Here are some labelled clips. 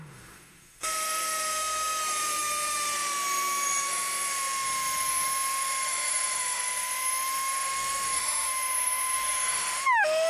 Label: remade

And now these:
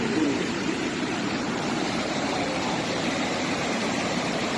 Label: remade